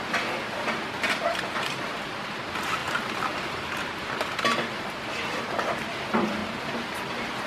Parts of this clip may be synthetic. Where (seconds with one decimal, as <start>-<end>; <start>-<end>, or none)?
none